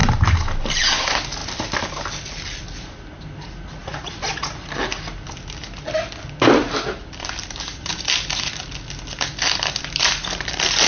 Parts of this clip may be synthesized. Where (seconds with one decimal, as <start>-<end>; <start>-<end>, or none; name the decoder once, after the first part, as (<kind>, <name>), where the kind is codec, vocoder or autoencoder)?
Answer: 6.6-7.9 (vocoder, BigVGAN v2)